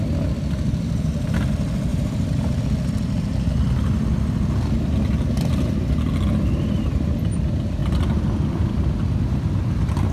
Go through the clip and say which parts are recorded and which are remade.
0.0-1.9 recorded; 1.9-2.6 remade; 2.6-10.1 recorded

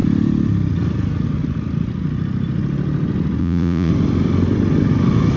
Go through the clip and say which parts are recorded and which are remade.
0.0-3.4 recorded; 3.4-3.9 remade; 3.9-5.4 recorded

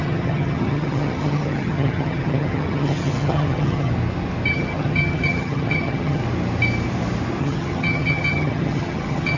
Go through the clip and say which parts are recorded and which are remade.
0.0-3.9 remade; 3.9-4.5 recorded; 4.5-6.2 remade; 6.2-7.4 recorded; 7.4-9.4 remade

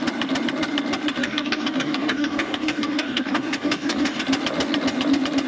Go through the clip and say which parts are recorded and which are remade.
0.0-1.2 recorded; 1.2-4.2 remade; 4.2-5.5 recorded

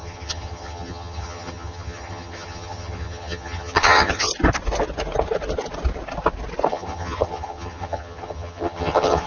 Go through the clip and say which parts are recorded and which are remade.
0.0-4.3 remade; 4.3-6.7 recorded; 6.7-9.3 remade

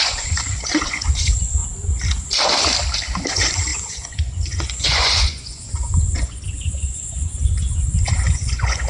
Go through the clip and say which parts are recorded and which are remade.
0.0-1.6 remade; 1.6-3.3 recorded; 3.3-8.9 remade

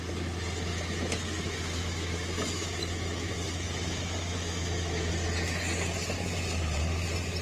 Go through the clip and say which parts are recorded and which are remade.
0.0-0.7 recorded; 0.7-5.1 remade; 5.1-7.4 recorded

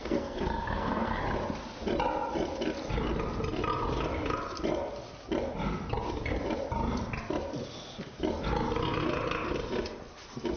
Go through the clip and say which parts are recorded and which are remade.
0.0-1.2 remade; 1.2-10.6 recorded